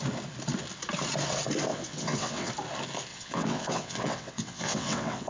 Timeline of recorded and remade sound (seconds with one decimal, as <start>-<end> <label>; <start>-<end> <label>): 0.0-1.7 recorded; 1.7-2.5 remade; 2.5-3.1 recorded; 3.1-5.3 remade